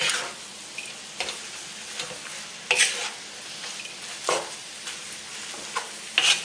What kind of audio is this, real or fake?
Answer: real